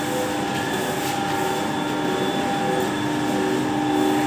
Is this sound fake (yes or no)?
no